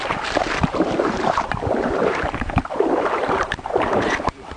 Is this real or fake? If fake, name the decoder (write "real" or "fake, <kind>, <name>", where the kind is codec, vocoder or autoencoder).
fake, vocoder, BigVGAN v2